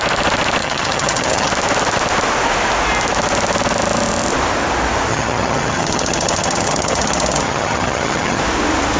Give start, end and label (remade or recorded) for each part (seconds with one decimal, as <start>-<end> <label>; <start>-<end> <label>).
0.0-0.6 recorded; 0.6-1.5 remade; 1.5-5.1 recorded; 5.1-8.4 remade; 8.4-9.0 recorded

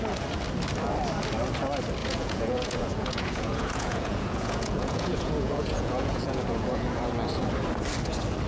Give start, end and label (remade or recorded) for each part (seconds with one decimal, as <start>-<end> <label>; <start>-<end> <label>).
0.0-2.0 recorded; 2.0-7.1 remade; 7.1-8.5 recorded

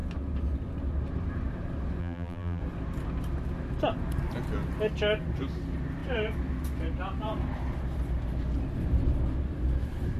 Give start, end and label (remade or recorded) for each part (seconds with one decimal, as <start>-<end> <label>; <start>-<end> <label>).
0.0-2.0 recorded; 2.0-2.6 remade; 2.6-10.2 recorded

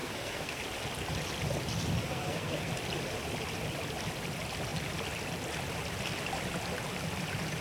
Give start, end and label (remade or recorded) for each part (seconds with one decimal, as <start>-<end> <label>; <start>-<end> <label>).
0.0-0.6 remade; 0.6-2.0 recorded; 2.0-2.7 remade; 2.7-7.6 recorded